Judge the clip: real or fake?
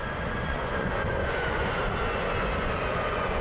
fake